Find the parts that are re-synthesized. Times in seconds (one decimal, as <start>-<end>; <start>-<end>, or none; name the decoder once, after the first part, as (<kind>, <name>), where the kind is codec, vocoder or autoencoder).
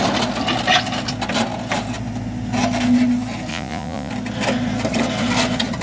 3.5-4.1 (vocoder, Vocos)